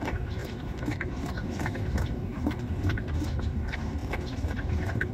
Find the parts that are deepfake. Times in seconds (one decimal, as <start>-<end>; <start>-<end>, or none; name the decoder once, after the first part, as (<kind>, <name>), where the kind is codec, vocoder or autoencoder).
0.0-5.1 (codec, DAC)